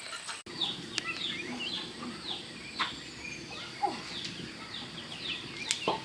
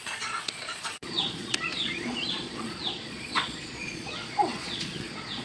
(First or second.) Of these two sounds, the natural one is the first